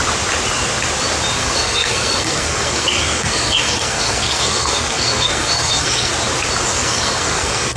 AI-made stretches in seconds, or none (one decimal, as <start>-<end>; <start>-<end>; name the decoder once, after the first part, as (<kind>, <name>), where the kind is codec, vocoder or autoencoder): 1.4-6.1 (codec, SNAC); 6.7-7.8